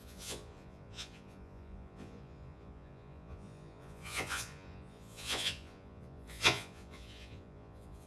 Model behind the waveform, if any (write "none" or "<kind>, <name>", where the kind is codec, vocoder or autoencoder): vocoder, Vocos